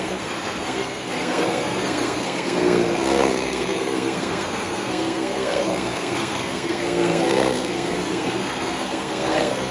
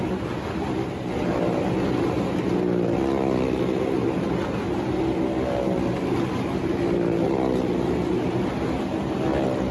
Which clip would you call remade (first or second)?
first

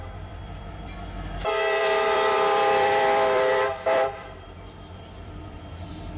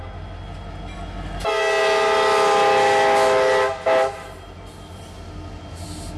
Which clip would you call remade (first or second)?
first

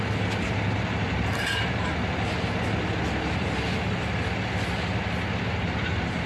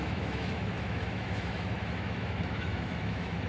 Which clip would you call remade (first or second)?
second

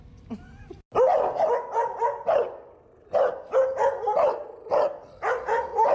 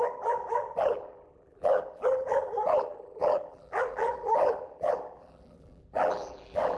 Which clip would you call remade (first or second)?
second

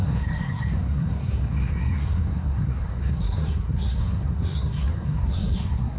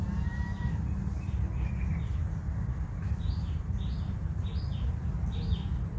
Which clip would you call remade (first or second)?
first